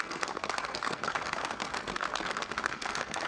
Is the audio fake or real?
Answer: fake